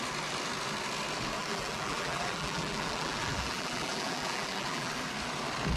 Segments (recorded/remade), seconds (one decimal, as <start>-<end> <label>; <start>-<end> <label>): 0.0-1.4 recorded; 1.4-4.9 remade; 4.9-5.8 recorded